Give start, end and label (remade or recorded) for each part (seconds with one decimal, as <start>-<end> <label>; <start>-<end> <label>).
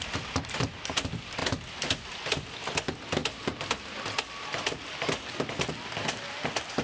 0.0-6.8 recorded